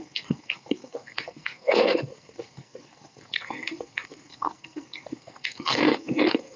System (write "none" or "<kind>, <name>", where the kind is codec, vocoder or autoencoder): codec, SNAC